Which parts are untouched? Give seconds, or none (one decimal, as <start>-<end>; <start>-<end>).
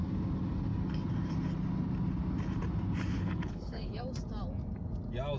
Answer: 0.0-3.1; 4.0-5.4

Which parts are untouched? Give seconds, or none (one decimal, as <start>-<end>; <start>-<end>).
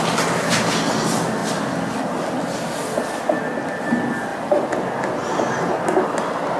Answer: 0.0-6.6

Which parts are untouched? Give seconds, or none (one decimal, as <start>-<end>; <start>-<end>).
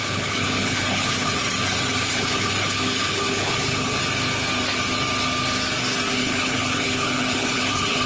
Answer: 1.4-2.1; 4.0-6.1